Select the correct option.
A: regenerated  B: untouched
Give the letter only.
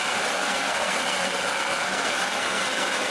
A